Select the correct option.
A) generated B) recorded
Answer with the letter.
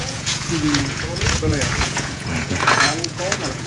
A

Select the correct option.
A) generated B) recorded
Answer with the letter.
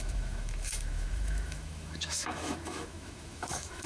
A